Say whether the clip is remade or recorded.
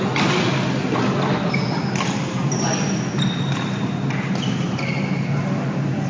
recorded